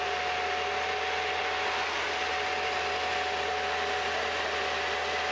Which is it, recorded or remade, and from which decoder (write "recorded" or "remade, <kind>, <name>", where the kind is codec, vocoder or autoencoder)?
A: recorded